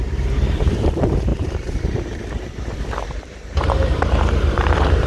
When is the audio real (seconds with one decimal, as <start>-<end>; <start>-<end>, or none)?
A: none